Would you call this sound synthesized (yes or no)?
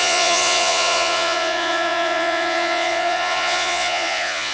yes